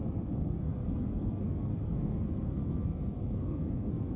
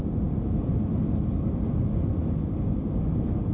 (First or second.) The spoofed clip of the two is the first